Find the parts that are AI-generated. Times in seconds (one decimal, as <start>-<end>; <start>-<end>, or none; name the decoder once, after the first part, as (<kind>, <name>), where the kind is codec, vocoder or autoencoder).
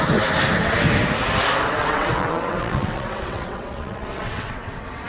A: 1.8-5.1 (vocoder, WaveNeXt)